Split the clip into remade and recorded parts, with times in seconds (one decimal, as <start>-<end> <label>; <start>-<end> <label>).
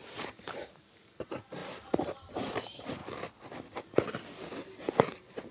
0.0-3.0 remade; 3.0-4.9 recorded; 4.9-5.5 remade